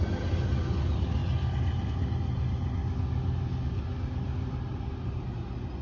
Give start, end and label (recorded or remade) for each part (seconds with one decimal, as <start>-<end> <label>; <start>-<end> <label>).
0.0-5.8 recorded